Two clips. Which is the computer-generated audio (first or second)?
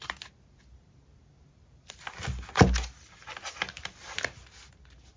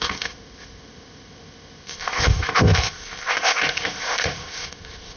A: second